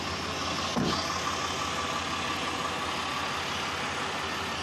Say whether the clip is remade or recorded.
recorded